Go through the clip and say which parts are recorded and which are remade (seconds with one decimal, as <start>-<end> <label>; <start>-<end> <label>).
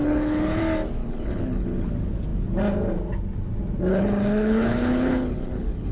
0.0-0.6 remade; 0.6-1.0 recorded; 1.0-1.9 remade; 1.9-3.9 recorded; 3.9-5.9 remade